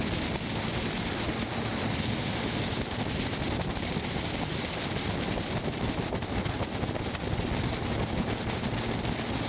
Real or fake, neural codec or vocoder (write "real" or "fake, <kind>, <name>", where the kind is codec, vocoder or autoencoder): real